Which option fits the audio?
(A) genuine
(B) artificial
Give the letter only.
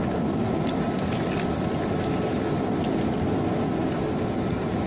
A